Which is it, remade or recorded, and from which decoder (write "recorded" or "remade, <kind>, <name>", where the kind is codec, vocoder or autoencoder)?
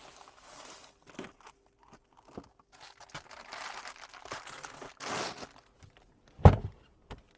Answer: recorded